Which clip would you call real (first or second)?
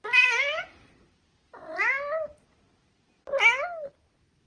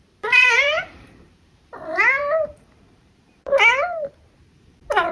first